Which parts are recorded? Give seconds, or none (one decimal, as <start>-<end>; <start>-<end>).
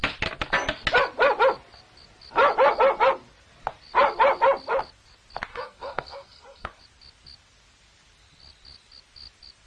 0.0-5.5; 6.8-9.7